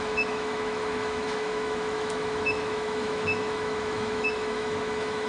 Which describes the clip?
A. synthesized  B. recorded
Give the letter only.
A